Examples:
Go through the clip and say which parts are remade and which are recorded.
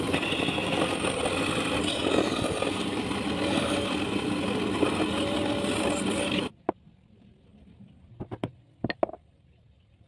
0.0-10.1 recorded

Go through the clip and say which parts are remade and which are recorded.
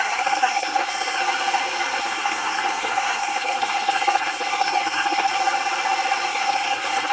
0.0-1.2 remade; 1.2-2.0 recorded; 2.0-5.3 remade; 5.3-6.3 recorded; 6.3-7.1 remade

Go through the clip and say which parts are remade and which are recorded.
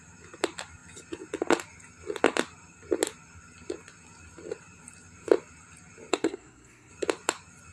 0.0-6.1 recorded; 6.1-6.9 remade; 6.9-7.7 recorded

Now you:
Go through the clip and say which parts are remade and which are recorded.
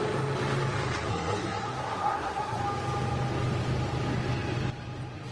0.0-1.1 recorded; 1.1-2.6 remade; 2.6-5.3 recorded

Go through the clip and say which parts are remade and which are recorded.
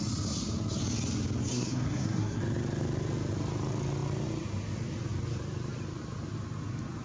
0.0-1.5 recorded; 1.5-2.4 remade; 2.4-7.0 recorded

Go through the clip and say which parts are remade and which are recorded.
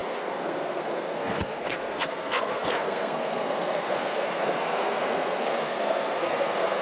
0.0-6.8 remade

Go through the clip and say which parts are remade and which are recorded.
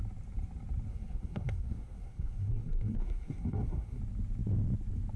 0.0-0.9 recorded; 0.9-4.0 remade; 4.0-5.2 recorded